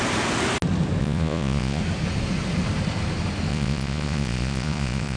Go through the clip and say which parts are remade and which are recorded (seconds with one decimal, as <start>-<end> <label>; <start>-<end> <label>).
0.0-1.0 recorded; 1.0-1.8 remade; 1.8-3.5 recorded; 3.5-5.2 remade